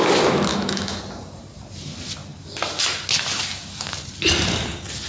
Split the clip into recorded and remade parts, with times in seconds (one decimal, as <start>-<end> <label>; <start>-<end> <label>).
0.0-0.5 recorded; 0.5-1.0 remade; 1.0-5.1 recorded